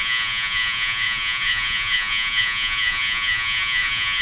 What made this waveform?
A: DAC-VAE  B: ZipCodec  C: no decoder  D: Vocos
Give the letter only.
D